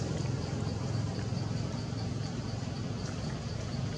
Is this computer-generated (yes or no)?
no